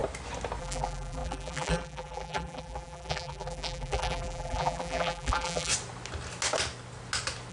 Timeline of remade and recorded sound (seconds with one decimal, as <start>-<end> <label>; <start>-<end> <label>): 0.0-0.6 recorded; 0.6-5.7 remade; 5.7-7.5 recorded